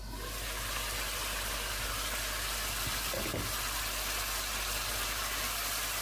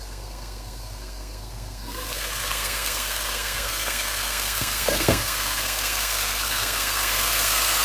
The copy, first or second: second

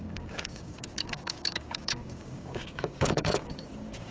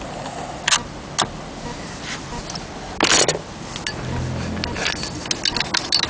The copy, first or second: first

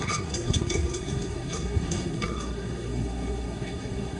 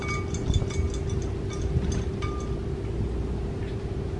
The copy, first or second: first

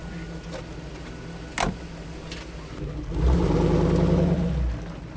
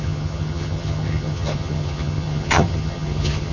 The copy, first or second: second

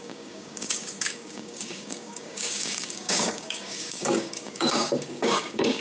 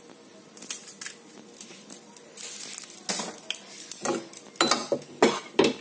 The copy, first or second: first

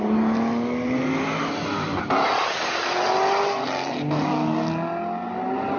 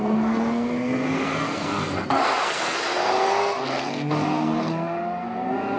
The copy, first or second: second